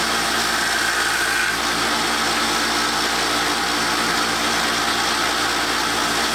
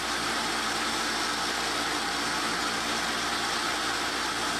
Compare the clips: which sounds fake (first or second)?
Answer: second